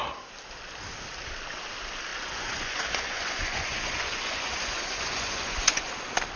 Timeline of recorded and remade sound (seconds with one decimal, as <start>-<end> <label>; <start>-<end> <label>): 0.0-2.1 recorded; 2.1-5.9 remade; 5.9-6.4 recorded